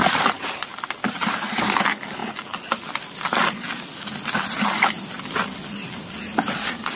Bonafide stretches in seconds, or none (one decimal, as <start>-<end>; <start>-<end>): 0.0-7.0